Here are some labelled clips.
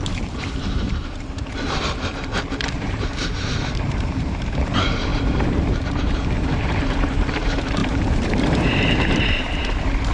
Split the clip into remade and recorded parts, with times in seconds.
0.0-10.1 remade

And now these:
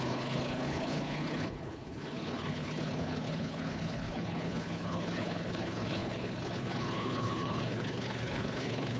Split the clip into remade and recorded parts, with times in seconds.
0.0-9.0 remade

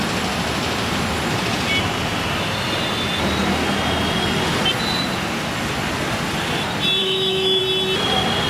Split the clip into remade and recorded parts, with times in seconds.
0.0-7.0 recorded; 7.0-7.6 remade; 7.6-8.5 recorded

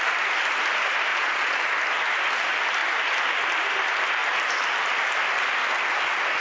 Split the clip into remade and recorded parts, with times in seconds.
0.0-1.1 recorded; 1.1-1.6 remade; 1.6-6.4 recorded

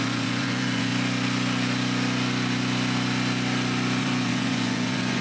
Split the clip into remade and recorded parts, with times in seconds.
0.0-0.9 remade; 0.9-4.0 recorded; 4.0-5.2 remade

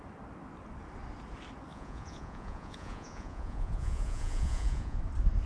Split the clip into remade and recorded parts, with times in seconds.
0.0-1.7 recorded; 1.7-5.0 remade; 5.0-5.5 recorded